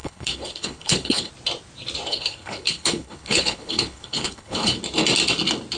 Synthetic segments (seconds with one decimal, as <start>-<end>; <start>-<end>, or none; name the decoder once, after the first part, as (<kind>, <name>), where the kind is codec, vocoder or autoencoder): 0.0-1.3 (codec, HILCodec); 2.1-4.8